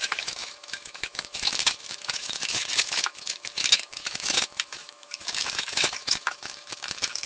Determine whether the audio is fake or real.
fake